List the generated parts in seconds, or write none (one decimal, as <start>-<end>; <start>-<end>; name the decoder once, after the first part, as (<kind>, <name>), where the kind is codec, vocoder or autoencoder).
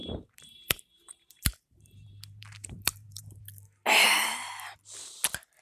0.0-3.4 (vocoder, BigVGAN v2)